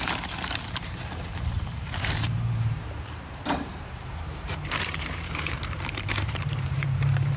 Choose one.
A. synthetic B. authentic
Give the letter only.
A